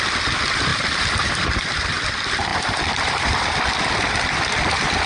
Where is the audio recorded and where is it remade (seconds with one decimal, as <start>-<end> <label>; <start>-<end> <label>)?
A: 0.0-0.7 recorded; 0.7-1.5 remade; 1.5-2.5 recorded; 2.5-3.9 remade; 3.9-5.1 recorded